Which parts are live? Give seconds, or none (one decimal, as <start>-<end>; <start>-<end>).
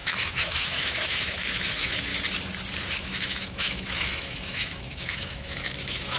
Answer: 2.1-3.0